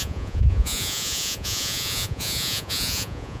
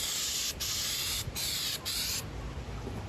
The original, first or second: second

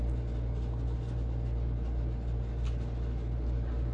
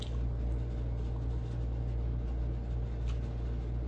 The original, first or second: first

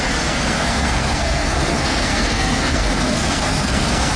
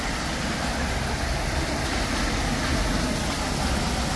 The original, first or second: second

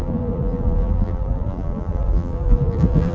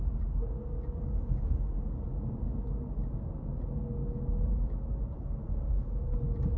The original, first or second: second